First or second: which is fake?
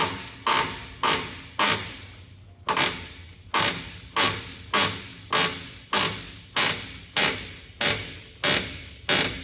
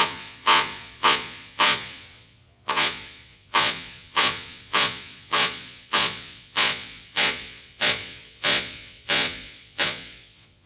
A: second